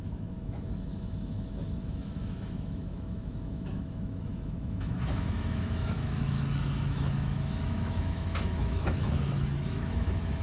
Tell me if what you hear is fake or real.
fake